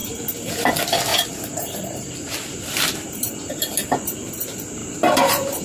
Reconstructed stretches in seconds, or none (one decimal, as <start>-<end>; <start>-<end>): 1.1-3.7; 4.8-5.6

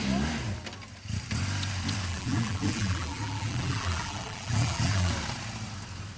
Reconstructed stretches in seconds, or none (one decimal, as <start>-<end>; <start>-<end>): 2.1-5.1